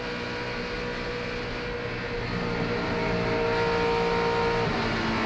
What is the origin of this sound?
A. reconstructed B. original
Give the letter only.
B